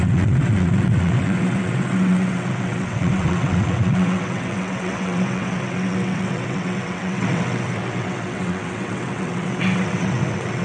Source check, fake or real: fake